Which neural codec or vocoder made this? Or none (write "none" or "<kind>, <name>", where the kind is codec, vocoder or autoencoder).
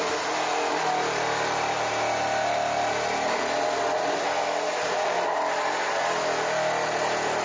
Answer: none